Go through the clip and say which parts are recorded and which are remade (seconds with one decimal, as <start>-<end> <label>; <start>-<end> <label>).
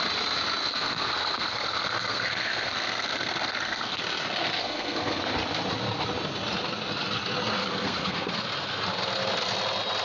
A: 0.0-0.6 recorded; 0.6-4.0 remade; 4.0-4.6 recorded; 4.6-5.2 remade; 5.2-7.6 recorded; 7.6-8.3 remade; 8.3-10.0 recorded